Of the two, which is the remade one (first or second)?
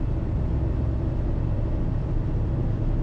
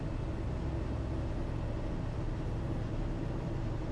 first